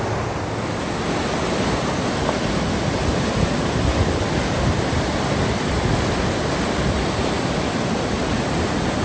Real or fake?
real